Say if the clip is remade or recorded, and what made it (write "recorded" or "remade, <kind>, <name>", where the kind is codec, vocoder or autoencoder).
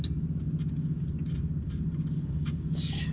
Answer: recorded